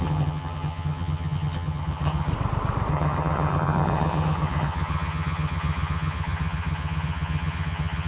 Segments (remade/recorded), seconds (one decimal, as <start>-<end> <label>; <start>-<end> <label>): 0.0-2.3 remade; 2.3-2.9 recorded; 2.9-8.1 remade